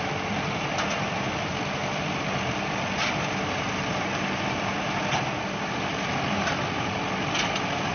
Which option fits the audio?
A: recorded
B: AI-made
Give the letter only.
A